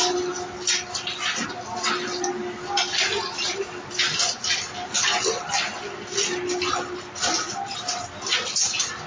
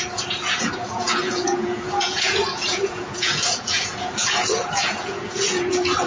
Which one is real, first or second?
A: first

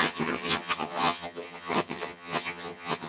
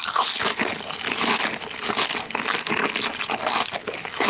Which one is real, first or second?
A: second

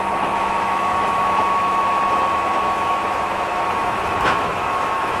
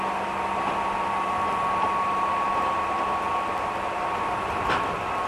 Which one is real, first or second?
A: second